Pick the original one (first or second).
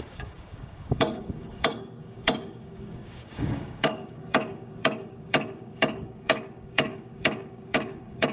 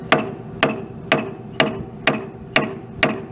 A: second